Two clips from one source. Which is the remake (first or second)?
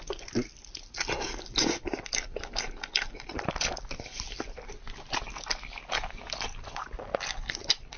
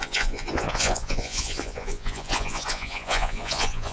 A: second